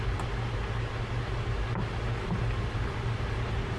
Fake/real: real